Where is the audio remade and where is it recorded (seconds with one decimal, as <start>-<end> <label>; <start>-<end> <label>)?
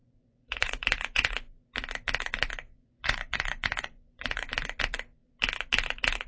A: 0.0-1.6 remade; 1.6-2.7 recorded; 2.7-4.5 remade; 4.5-6.3 recorded